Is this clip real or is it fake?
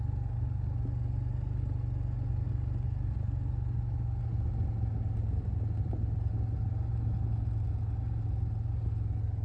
real